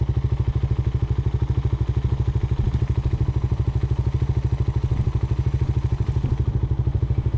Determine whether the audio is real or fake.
real